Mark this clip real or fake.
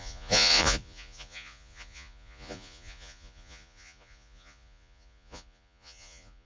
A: fake